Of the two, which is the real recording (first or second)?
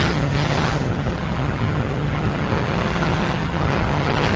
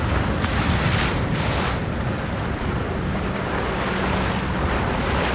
second